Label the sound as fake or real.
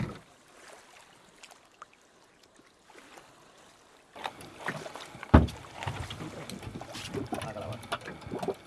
real